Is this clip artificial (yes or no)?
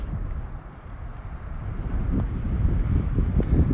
no